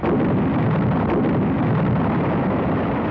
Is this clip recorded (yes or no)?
yes